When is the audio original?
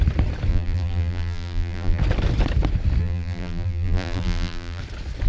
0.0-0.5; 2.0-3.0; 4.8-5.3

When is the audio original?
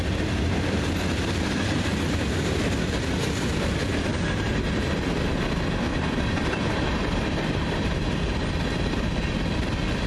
0.0-4.1; 5.4-5.9; 9.7-10.1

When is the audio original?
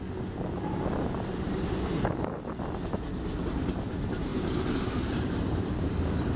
0.0-4.3; 5.3-6.4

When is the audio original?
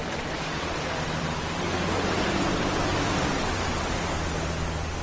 2.1-2.9; 4.3-5.0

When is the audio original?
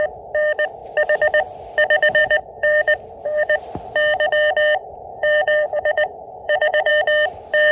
0.0-2.2; 3.7-5.1; 6.9-7.7